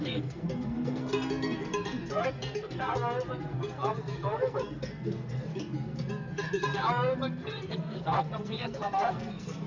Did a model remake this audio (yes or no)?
yes